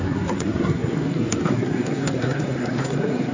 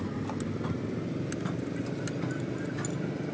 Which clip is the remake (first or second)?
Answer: first